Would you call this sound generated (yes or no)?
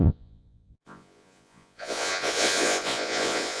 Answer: yes